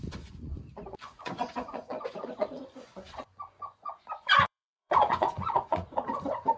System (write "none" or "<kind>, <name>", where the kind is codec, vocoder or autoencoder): vocoder, Vocos